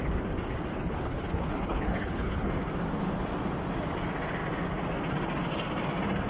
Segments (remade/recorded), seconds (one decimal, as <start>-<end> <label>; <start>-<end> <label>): 0.0-0.7 recorded; 0.7-2.5 remade; 2.5-6.3 recorded